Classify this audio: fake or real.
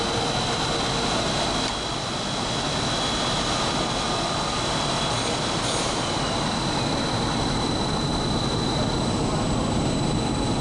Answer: real